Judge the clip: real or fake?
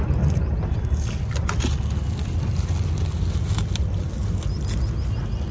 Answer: real